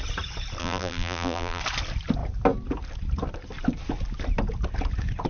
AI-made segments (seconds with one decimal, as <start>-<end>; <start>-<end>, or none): 0.6-1.6